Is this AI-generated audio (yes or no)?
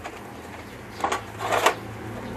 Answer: no